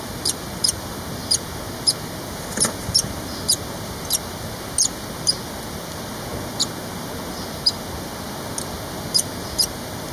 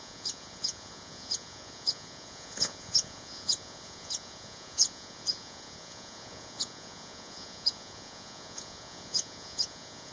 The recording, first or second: first